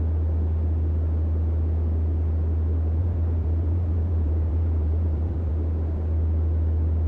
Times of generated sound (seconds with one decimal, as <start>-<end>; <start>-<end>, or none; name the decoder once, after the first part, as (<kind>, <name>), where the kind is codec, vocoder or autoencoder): 3.0-5.5 (vocoder, BigVGAN v2)